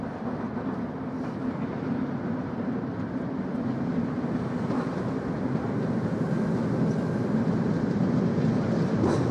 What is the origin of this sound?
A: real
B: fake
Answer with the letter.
A